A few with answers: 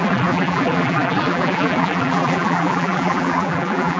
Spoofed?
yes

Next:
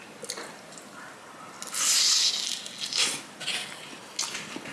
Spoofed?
no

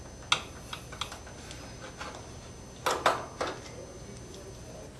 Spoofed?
no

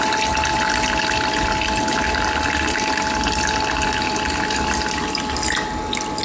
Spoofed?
no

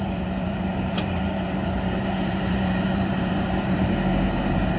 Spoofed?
yes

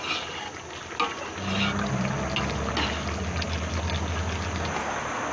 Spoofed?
no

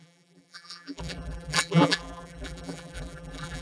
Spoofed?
yes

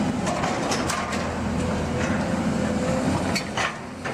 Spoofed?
no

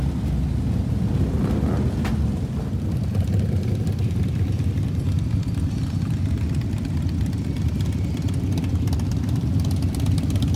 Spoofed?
no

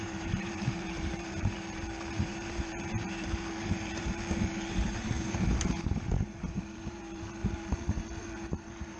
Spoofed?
yes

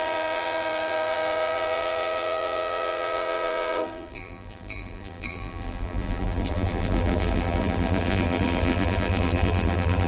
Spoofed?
yes